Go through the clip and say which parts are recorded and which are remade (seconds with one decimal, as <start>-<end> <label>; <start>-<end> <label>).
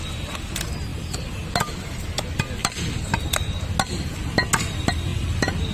0.0-0.9 recorded; 0.9-1.5 remade; 1.5-2.6 recorded; 2.6-3.6 remade; 3.6-5.1 recorded; 5.1-5.7 remade